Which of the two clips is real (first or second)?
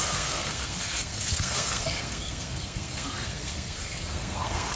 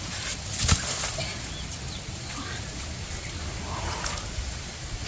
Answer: second